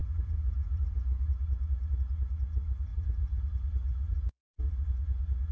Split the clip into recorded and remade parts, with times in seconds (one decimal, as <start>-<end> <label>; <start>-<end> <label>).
0.0-1.3 remade; 1.3-2.9 recorded; 2.9-3.4 remade; 3.4-3.9 recorded; 3.9-4.4 remade; 4.4-5.5 recorded